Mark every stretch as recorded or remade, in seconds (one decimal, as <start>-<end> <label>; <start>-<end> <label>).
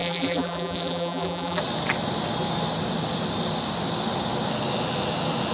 0.0-1.6 remade; 1.6-5.5 recorded